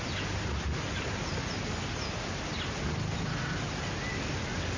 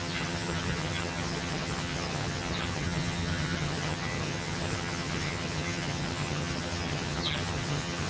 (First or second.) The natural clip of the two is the first